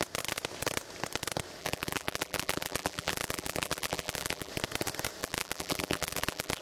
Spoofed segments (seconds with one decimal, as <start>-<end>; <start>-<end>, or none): 1.6-4.5; 5.2-6.6